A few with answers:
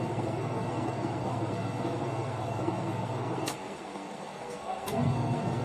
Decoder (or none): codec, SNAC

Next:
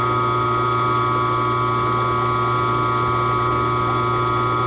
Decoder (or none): none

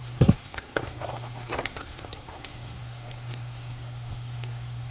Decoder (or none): codec, SNAC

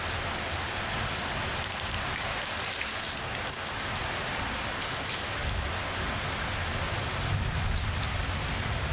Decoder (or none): none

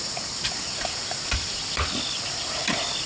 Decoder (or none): none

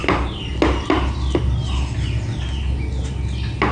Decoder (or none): none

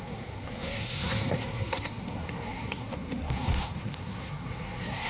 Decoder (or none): codec, SNAC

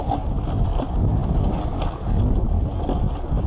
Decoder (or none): none